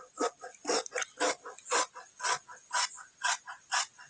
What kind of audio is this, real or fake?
real